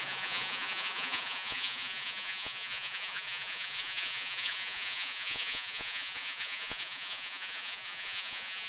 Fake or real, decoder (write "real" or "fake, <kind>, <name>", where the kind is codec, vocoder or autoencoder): fake, vocoder, Vocos